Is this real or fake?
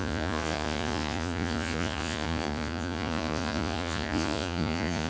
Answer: fake